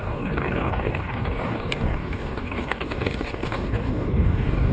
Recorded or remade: remade